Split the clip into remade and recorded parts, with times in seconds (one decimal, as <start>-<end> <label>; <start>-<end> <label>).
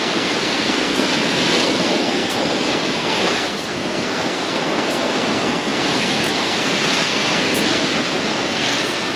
0.0-9.2 remade